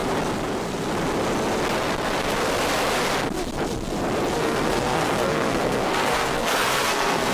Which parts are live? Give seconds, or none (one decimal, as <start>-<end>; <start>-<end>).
0.0-4.4